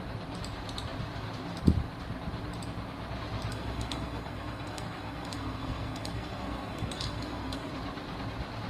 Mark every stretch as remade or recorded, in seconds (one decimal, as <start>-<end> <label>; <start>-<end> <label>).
0.0-3.5 recorded; 3.5-7.7 remade; 7.7-8.7 recorded